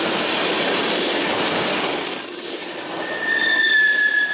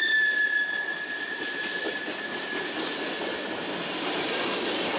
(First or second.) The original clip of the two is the second